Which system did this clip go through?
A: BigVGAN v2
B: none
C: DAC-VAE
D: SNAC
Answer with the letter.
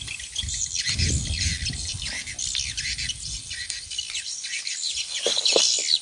A